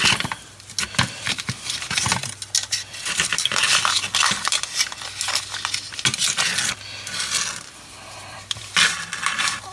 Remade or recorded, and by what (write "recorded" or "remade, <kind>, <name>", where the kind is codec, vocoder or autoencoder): recorded